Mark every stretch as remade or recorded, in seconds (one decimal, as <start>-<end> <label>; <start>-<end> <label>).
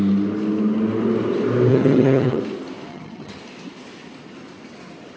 0.0-1.7 recorded; 1.7-2.4 remade; 2.4-2.9 recorded; 2.9-3.4 remade; 3.4-5.2 recorded